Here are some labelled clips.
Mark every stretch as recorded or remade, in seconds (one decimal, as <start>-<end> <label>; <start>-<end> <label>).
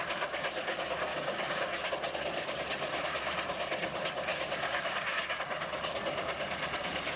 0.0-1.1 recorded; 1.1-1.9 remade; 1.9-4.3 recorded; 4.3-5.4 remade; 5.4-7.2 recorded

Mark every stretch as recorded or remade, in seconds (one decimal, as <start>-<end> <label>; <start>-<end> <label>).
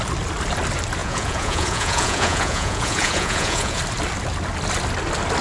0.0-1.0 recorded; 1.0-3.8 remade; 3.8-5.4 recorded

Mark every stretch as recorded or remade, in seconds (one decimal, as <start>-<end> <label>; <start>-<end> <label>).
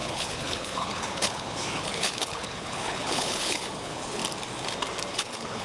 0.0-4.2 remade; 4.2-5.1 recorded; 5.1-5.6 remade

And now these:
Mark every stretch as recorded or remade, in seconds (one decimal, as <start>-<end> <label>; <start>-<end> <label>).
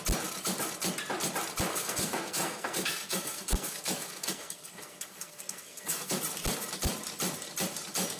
0.0-1.7 recorded; 1.7-6.2 remade; 6.2-8.2 recorded